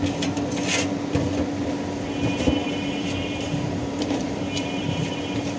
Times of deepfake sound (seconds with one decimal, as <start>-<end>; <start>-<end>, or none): 2.6-5.6